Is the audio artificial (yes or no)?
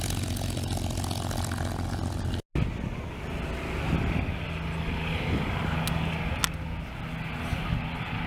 no